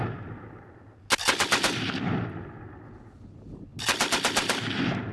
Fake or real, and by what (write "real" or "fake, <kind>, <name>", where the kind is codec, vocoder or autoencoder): real